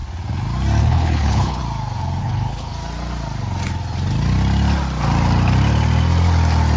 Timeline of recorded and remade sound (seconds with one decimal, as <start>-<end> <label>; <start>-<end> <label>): 0.0-0.8 recorded; 0.8-1.6 remade; 1.6-2.2 recorded; 2.2-2.7 remade; 2.7-6.8 recorded